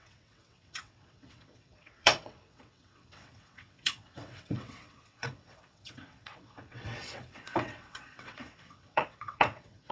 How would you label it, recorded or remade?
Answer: remade